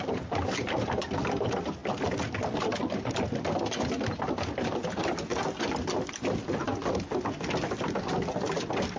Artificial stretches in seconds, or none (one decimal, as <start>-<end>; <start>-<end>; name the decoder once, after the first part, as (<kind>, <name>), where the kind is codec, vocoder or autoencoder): 0.0-1.8 (vocoder, BigVGAN v2); 2.6-5.3; 6.0-6.7; 7.5-9.0